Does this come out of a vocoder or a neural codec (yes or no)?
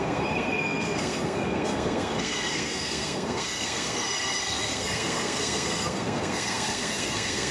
yes